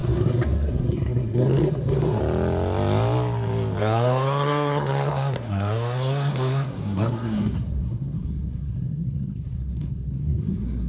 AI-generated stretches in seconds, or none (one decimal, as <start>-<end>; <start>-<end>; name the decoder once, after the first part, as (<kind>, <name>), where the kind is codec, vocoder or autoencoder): 0.0-2.2 (codec, SNAC); 3.8-10.9

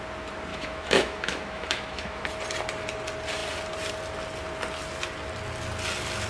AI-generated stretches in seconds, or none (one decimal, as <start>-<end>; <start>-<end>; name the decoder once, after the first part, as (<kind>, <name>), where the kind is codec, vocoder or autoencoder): 0.5-2.3 (autoencoder, DAC-VAE)

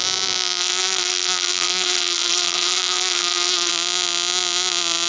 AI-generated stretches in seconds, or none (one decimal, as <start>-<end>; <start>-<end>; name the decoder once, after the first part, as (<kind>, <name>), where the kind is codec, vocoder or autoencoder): 0.6-3.7 (codec, SNAC)

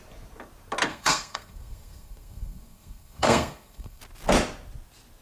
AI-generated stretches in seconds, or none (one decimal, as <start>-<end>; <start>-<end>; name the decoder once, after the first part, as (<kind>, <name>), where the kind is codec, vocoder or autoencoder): 0.9-4.0 (codec, SNAC)

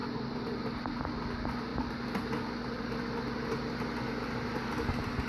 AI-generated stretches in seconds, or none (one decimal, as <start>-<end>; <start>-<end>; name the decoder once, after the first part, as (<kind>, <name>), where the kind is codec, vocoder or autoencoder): none

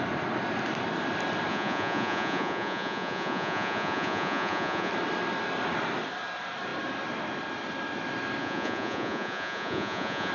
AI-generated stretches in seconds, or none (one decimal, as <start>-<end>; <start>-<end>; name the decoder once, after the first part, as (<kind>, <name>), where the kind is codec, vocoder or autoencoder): 1.5-4.9 (vocoder, Vocos); 8.4-10.3